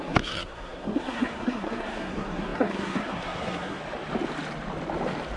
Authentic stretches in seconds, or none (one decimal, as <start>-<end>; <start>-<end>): 3.8-5.4